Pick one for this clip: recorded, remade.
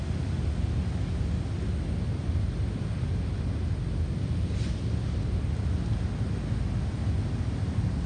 recorded